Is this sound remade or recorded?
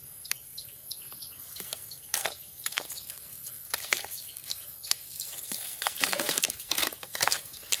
remade